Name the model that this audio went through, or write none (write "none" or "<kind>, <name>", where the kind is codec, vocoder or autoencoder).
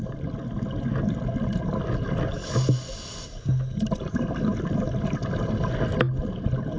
none